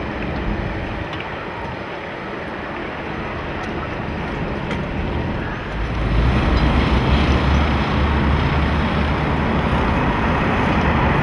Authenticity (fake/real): real